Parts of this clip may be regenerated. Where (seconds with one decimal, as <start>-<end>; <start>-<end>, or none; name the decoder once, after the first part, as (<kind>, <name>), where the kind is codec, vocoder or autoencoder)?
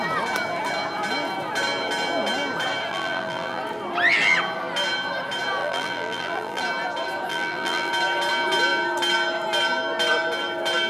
2.9-3.6 (vocoder, BigVGAN v2); 5.6-6.6; 7.3-7.9